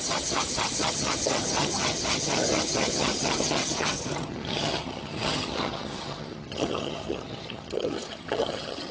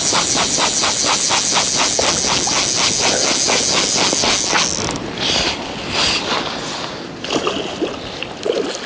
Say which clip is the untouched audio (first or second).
second